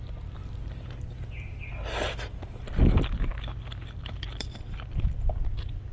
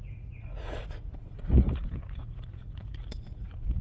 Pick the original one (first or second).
first